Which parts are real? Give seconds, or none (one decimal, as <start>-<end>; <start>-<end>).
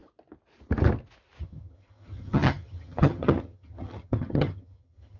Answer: 0.0-1.4